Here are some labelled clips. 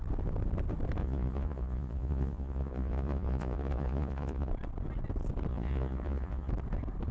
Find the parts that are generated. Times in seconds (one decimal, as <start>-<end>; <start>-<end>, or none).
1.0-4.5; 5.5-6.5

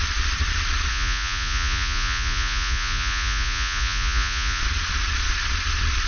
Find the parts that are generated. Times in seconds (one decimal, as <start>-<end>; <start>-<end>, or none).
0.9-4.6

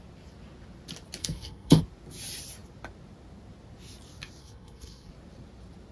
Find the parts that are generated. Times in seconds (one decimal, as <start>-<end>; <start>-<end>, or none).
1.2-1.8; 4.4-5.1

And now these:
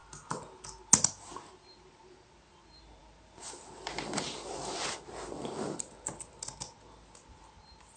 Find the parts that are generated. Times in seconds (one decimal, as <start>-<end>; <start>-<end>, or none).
none

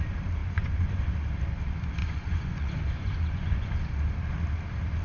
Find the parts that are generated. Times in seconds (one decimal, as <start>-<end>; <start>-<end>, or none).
0.4-1.0; 2.0-3.7

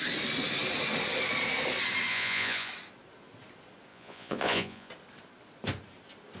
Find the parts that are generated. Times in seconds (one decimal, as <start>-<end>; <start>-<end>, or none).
2.1-2.7; 3.9-4.9